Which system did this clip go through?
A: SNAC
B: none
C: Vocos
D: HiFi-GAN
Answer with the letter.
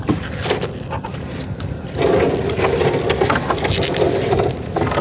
B